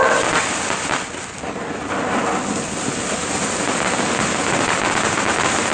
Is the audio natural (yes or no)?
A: yes